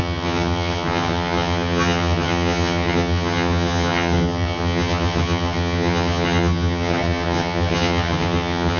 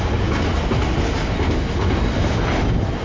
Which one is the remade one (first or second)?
first